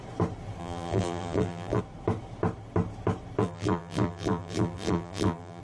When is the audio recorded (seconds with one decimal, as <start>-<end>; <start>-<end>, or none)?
0.0-0.6; 1.8-3.4